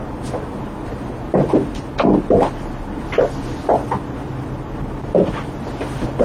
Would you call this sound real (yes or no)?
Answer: yes